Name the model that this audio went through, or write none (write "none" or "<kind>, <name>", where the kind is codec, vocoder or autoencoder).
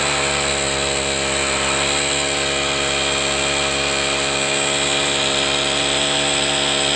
none